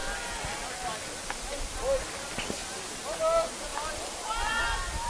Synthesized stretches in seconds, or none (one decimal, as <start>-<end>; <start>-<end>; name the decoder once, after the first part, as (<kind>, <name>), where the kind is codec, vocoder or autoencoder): none